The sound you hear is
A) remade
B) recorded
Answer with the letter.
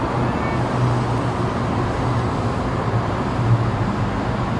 B